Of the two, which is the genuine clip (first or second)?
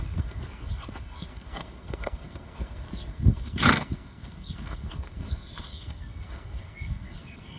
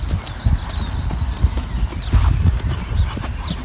second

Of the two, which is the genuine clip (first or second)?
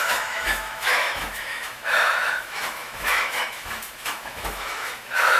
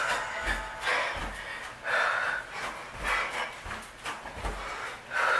second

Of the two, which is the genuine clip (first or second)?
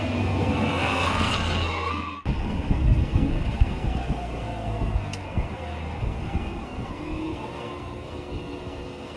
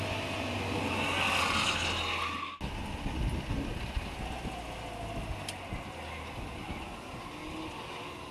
second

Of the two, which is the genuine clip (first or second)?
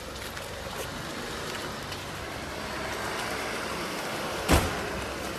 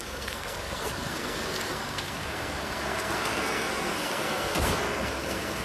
first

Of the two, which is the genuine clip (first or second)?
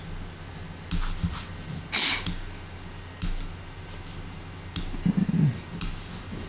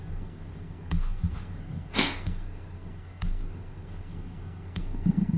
first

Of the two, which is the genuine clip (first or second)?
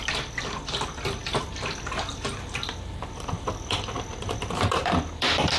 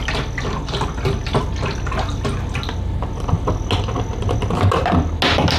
second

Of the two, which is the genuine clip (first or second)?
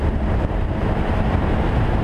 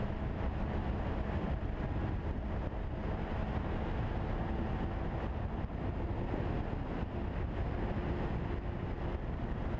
second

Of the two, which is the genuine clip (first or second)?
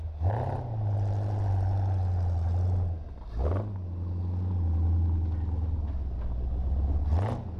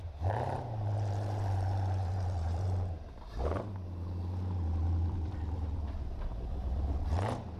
first